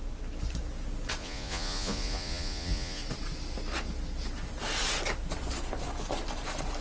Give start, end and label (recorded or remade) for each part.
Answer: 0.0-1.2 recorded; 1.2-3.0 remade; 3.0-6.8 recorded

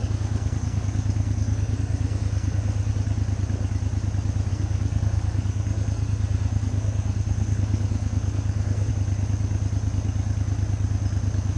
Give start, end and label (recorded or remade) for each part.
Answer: 0.0-2.9 remade; 2.9-4.5 recorded; 4.5-8.9 remade; 8.9-11.6 recorded